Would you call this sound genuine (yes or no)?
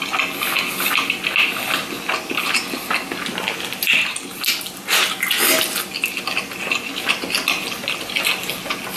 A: yes